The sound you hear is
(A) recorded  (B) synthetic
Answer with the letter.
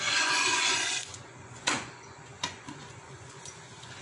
B